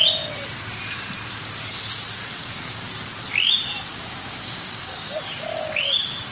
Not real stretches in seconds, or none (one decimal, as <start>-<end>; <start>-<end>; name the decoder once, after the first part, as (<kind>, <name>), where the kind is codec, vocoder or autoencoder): 2.4-2.9 (codec, DAC); 3.9-5.3